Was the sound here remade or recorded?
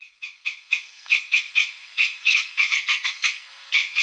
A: remade